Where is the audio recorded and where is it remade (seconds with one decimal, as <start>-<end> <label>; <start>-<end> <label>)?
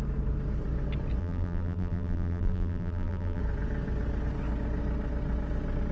0.0-1.2 recorded; 1.2-3.4 remade; 3.4-5.9 recorded